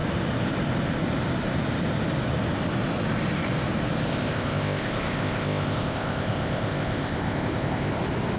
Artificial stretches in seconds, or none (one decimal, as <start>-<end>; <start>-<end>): 4.1-7.9